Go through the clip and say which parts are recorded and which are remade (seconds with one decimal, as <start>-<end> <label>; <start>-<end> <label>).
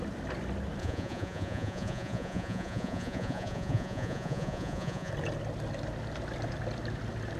0.0-0.8 recorded; 0.8-5.1 remade; 5.1-7.4 recorded